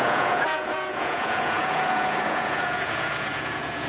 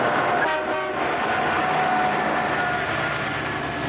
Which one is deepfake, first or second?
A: first